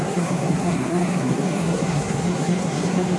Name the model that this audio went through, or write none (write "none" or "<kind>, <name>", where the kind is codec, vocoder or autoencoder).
codec, SNAC